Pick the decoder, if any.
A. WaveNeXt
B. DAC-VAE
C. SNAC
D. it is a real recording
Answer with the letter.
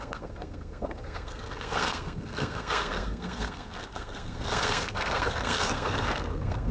C